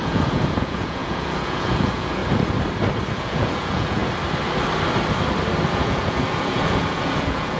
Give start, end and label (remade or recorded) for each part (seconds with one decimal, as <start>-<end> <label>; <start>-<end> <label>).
0.0-2.2 remade; 2.2-3.1 recorded; 3.1-4.0 remade; 4.0-5.7 recorded; 5.7-7.6 remade

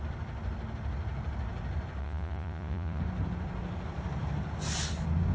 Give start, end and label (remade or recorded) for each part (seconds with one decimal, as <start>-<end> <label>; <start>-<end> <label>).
0.0-2.0 recorded; 2.0-3.0 remade; 3.0-5.3 recorded

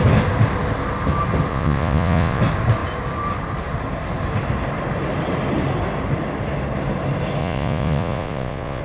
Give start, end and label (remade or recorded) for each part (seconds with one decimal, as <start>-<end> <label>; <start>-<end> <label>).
0.0-1.5 recorded; 1.5-2.4 remade; 2.4-7.4 recorded; 7.4-8.8 remade

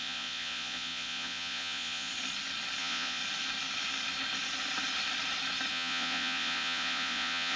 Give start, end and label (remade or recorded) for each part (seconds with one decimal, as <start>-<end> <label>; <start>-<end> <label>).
0.0-2.1 remade; 2.1-2.8 recorded; 2.8-3.2 remade; 3.2-5.7 recorded; 5.7-7.6 remade

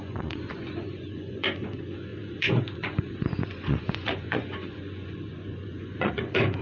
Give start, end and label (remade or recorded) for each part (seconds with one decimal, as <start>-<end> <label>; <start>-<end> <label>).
0.0-6.6 remade

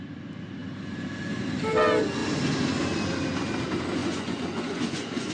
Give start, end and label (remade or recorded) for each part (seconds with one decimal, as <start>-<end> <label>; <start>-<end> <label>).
0.0-4.0 recorded; 4.0-5.3 remade

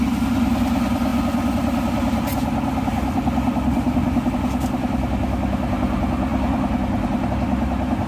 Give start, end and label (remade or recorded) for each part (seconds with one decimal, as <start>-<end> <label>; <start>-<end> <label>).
0.0-8.1 recorded